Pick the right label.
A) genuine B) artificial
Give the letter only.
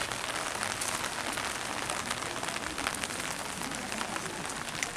A